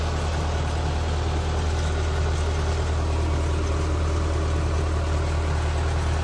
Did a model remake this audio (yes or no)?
no